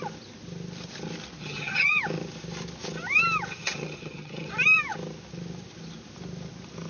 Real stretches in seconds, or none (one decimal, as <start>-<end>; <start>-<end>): 0.0-1.4; 2.0-3.5; 4.5-6.9